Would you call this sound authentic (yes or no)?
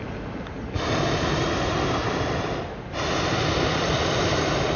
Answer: yes